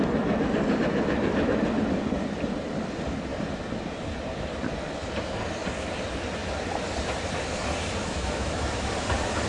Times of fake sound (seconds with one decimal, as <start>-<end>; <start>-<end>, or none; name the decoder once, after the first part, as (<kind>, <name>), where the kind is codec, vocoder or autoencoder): 8.0-8.9 (autoencoder, DAC-VAE)